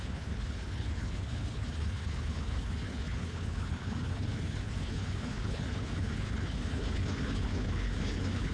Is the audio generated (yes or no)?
yes